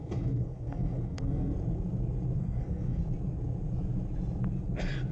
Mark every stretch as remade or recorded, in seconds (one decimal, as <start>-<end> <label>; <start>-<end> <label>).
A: 0.0-1.5 remade; 1.5-2.4 recorded; 2.4-3.0 remade; 3.0-5.1 recorded